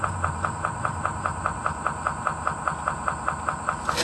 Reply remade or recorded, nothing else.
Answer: recorded